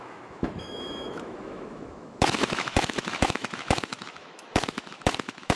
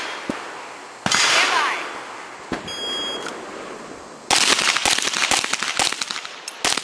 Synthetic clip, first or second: first